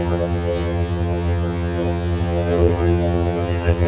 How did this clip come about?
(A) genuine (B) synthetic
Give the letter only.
B